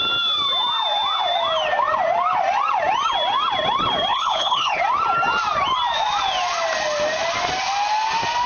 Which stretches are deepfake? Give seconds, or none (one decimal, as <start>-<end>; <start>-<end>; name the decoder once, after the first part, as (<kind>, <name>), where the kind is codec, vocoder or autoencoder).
4.1-4.8 (codec, HILCodec)